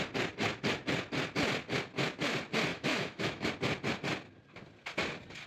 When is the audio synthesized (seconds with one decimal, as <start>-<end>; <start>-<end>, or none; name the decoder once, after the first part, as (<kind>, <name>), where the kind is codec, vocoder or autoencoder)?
2.7-3.5 (autoencoder, DAC-VAE)